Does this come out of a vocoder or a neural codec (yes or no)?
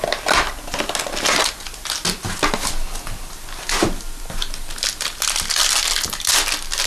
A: no